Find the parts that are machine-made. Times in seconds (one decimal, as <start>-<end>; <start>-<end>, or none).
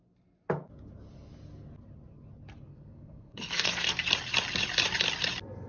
2.7-3.9